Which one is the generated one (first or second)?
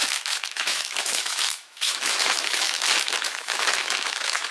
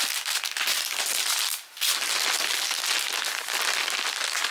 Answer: first